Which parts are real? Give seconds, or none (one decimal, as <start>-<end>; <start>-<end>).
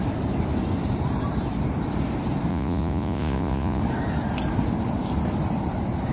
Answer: 0.0-2.5; 3.8-6.1